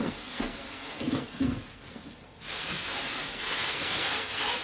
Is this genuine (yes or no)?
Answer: no